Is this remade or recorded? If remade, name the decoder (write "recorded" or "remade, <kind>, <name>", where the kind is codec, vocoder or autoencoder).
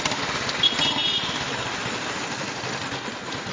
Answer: remade, vocoder, BigVGAN v2